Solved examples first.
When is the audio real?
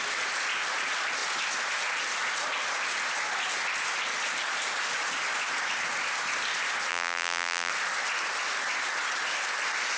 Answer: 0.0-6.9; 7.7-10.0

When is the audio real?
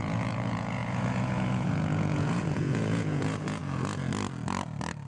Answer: 3.6-5.1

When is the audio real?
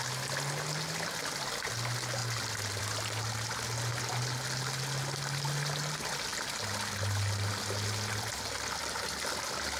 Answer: 0.0-9.8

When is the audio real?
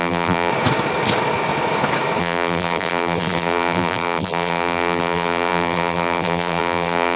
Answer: 0.5-2.2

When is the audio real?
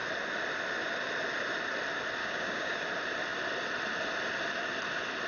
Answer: 0.0-2.2; 2.8-5.3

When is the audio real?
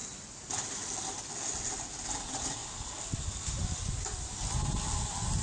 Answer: 0.0-5.4